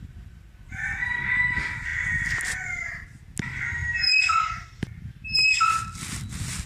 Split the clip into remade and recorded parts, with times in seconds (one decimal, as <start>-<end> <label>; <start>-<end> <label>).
0.0-6.7 recorded